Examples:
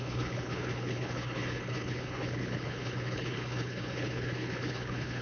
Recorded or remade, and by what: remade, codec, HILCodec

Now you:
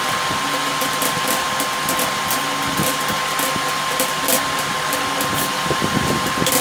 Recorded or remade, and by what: recorded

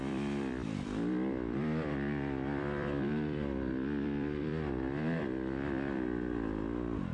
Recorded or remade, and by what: remade, vocoder, BigVGAN v2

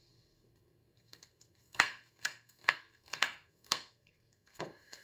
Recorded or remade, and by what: remade, codec, SNAC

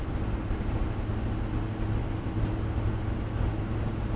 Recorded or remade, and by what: recorded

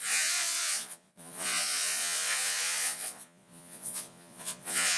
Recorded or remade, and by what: remade, vocoder, Vocos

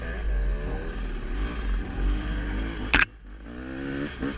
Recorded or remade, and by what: recorded